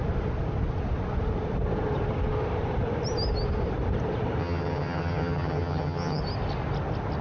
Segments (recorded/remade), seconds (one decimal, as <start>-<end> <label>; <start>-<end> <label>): 0.0-4.4 recorded; 4.4-6.2 remade; 6.2-7.2 recorded